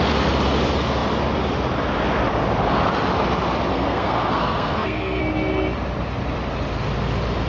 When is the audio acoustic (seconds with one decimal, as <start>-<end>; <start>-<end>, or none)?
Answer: 0.0-3.7; 5.2-7.5